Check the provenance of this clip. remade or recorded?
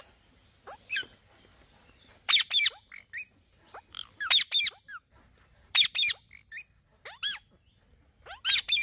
recorded